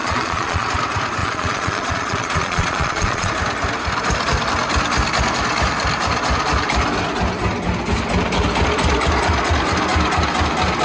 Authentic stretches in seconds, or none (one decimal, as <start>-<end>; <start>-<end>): 0.7-1.2; 3.3-10.8

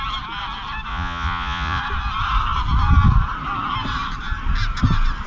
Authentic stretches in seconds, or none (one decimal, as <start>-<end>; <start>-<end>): 0.0-0.9; 1.8-5.3

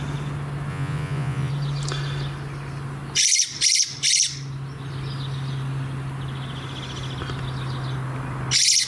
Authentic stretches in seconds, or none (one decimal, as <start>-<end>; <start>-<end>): 0.0-0.7; 1.5-8.9

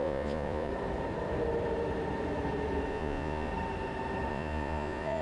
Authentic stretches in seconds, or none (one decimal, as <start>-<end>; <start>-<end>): 0.7-2.9; 3.5-4.3

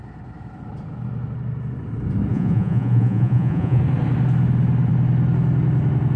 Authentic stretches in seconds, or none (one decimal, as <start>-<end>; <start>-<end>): 0.0-2.3; 3.8-6.2

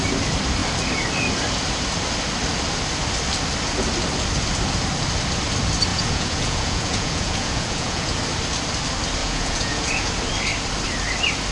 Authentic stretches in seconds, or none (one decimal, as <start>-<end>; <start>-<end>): 0.0-5.9; 8.2-9.2; 10.1-11.5